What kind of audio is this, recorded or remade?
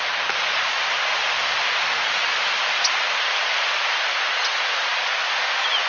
recorded